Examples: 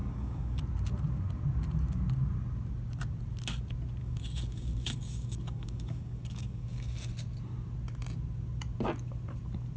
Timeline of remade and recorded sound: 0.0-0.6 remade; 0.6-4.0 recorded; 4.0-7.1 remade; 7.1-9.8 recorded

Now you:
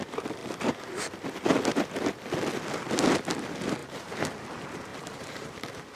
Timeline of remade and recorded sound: 0.0-3.8 recorded; 3.8-4.3 remade; 4.3-4.9 recorded; 4.9-5.5 remade; 5.5-6.0 recorded